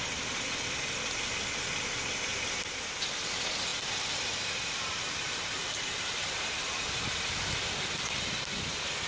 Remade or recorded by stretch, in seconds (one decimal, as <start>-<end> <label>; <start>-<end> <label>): 0.0-3.7 recorded; 3.7-7.5 remade; 7.5-9.1 recorded

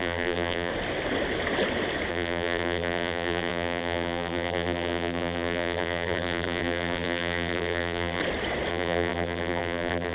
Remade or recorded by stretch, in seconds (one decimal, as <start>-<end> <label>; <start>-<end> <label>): 0.0-0.7 remade; 0.7-2.1 recorded; 2.1-8.2 remade; 8.2-8.7 recorded; 8.7-10.1 remade